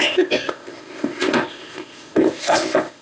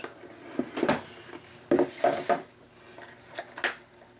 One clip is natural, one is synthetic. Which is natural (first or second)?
second